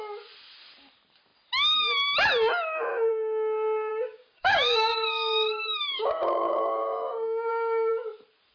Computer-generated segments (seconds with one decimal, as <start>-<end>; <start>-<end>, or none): 3.9-7.5